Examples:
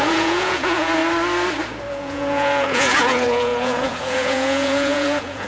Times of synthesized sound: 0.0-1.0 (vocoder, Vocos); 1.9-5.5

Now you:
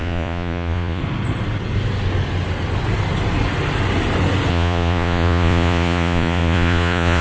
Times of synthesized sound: 0.0-1.0 (vocoder, Vocos); 4.5-7.2

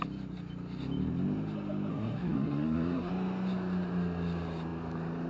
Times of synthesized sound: 1.9-3.1 (codec, SNAC)